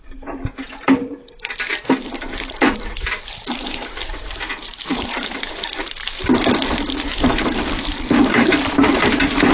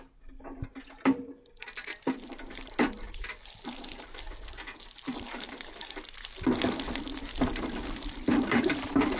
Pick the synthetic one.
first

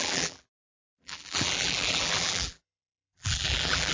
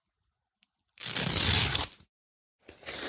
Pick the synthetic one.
first